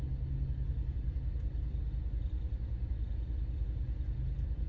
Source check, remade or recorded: recorded